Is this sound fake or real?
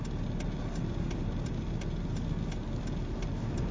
real